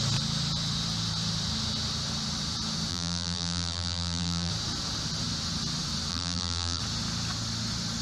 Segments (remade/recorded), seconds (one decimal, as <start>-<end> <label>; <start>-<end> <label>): 0.0-2.9 recorded; 2.9-4.5 remade; 4.5-6.1 recorded; 6.1-6.8 remade; 6.8-8.0 recorded